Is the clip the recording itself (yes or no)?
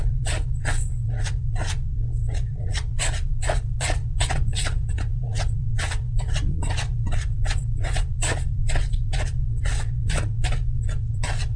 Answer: no